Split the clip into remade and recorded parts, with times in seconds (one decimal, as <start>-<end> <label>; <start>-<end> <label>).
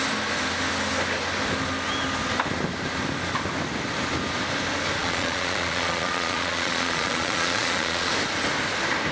0.0-5.0 recorded; 5.0-8.1 remade; 8.1-9.1 recorded